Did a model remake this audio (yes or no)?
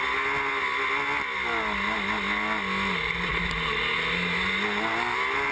no